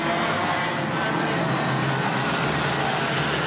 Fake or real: real